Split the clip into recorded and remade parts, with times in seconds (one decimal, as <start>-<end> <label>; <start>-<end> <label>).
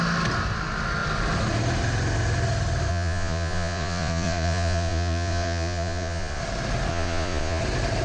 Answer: 0.0-2.9 recorded; 2.9-6.4 remade; 6.4-6.9 recorded; 6.9-7.6 remade; 7.6-8.0 recorded